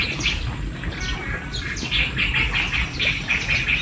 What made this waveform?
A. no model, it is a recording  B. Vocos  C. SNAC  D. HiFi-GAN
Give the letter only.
A